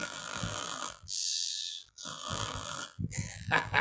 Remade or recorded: remade